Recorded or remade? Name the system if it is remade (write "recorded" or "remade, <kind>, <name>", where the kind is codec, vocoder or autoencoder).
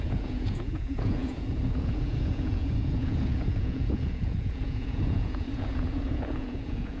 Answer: remade, vocoder, Vocos